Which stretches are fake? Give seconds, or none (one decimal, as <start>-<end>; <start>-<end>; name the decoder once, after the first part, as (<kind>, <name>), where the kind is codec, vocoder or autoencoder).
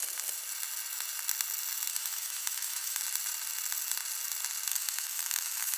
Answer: 1.9-3.0 (autoencoder, DAC-VAE); 4.7-5.8